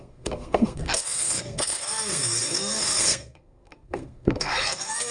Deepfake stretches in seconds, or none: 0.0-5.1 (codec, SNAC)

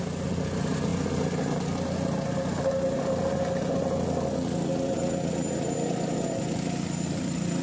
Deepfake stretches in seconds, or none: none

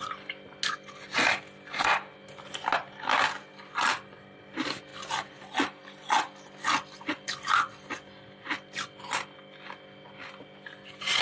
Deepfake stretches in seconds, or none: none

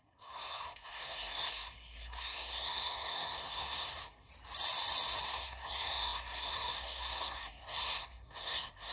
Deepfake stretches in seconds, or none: 0.0-4.3 (codec, SNAC); 5.2-8.9

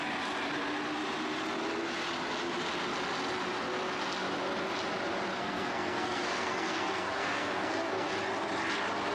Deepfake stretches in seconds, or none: 5.3-8.1 (codec, SNAC)